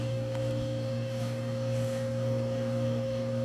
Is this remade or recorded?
remade